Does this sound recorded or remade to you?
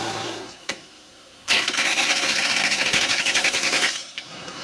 remade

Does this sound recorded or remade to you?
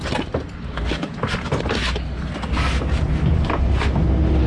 recorded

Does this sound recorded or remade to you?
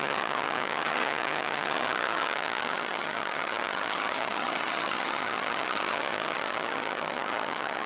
remade